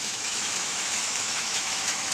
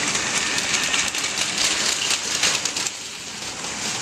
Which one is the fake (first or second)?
first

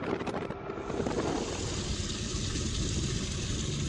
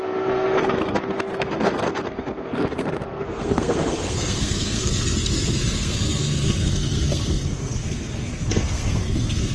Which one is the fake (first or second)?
second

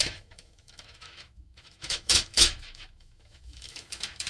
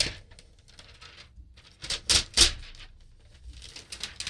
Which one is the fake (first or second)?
first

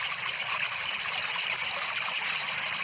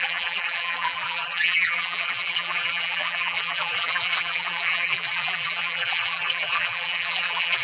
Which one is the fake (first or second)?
second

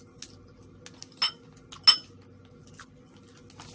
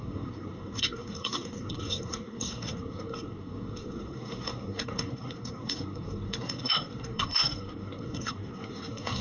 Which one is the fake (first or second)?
second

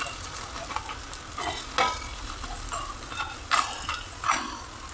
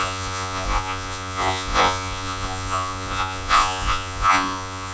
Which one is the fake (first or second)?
second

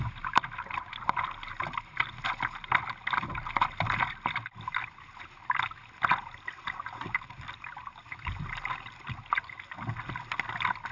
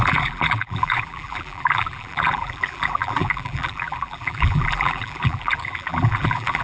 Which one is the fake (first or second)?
second